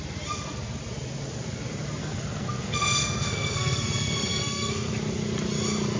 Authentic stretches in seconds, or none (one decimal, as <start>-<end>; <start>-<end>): 0.0-2.0; 4.9-6.0

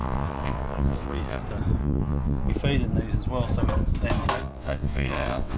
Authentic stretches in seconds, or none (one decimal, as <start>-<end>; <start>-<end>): 1.4-1.8; 2.5-4.4

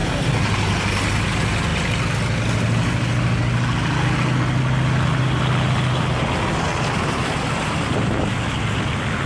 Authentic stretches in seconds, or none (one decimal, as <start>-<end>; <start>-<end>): 0.8-7.2; 7.8-9.3

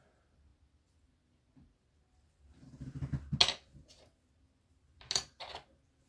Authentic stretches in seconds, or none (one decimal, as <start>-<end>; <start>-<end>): 0.0-6.1

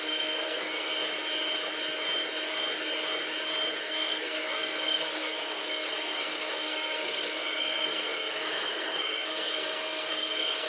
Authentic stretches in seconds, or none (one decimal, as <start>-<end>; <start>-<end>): 0.9-3.8

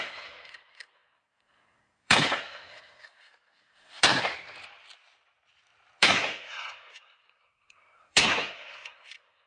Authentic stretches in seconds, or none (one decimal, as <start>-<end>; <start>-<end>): 4.3-6.0

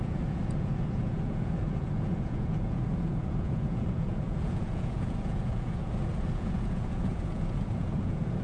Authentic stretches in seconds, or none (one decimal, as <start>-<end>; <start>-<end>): none

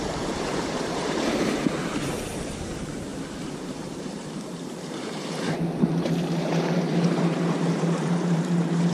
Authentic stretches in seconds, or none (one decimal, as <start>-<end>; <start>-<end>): none